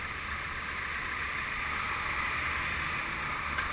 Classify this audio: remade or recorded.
recorded